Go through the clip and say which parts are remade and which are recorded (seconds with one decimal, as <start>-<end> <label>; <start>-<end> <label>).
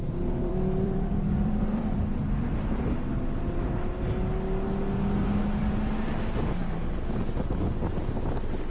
0.0-1.8 remade; 1.8-8.7 recorded